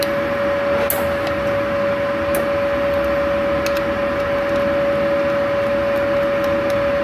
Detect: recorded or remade recorded